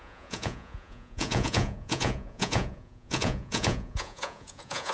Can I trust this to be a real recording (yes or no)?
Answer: no